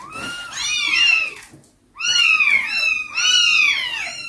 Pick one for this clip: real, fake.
real